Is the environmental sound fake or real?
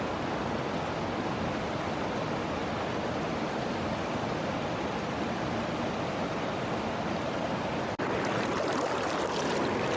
real